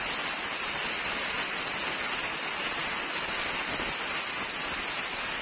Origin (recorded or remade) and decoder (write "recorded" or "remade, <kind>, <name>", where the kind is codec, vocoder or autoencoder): recorded